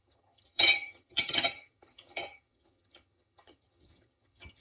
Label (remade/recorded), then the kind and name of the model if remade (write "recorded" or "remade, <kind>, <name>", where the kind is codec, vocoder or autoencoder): remade, vocoder, HiFi-GAN